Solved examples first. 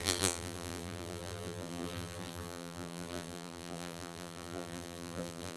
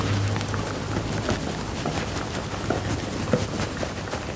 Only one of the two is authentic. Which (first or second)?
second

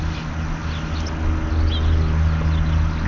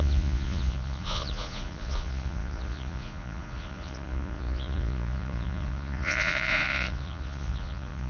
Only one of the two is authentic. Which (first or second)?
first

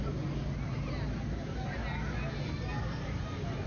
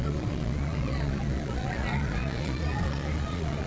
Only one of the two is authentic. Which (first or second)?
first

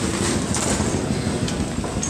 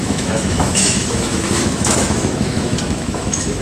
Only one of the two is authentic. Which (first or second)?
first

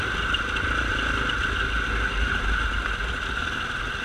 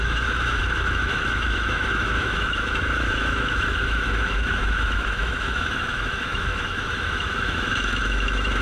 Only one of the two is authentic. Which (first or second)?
first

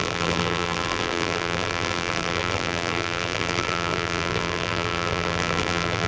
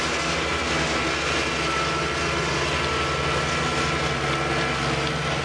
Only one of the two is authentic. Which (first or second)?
second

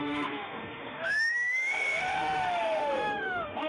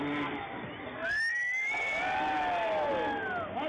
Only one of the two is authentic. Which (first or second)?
second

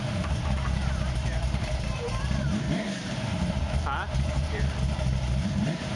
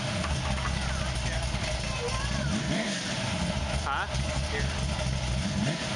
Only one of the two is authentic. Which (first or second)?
second